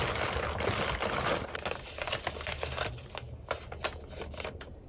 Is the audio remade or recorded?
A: recorded